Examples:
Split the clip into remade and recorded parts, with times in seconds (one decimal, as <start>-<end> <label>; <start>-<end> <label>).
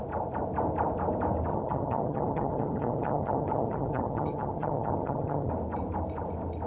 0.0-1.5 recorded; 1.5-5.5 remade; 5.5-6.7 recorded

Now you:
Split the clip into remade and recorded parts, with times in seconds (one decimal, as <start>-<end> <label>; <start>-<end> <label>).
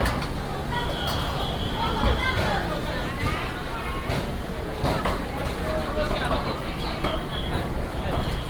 0.0-3.7 recorded; 3.7-4.8 remade; 4.8-7.3 recorded; 7.3-8.5 remade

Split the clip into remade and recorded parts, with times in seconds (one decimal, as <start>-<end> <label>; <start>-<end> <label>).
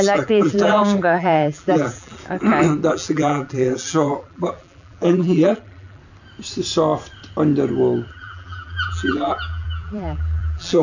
0.0-2.2 remade; 2.2-2.9 recorded; 2.9-6.0 remade; 6.0-8.1 recorded; 8.1-10.8 remade